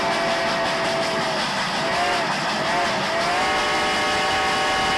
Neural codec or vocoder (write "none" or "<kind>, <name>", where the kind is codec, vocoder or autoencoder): none